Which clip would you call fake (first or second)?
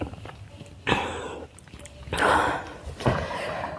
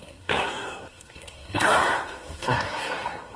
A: second